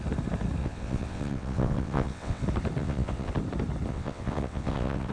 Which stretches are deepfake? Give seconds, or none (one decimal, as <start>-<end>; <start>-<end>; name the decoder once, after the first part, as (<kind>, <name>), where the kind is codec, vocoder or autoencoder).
0.6-2.4 (vocoder, WaveNeXt); 2.8-3.3; 3.9-5.1